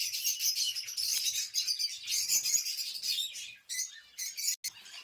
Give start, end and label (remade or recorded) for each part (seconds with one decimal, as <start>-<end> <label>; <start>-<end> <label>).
0.0-5.0 recorded